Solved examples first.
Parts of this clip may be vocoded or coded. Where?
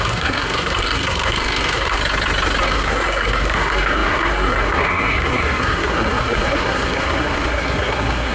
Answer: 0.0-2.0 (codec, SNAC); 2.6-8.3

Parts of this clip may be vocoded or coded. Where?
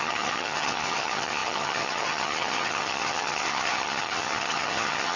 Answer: 0.0-5.2 (vocoder, HiFi-GAN)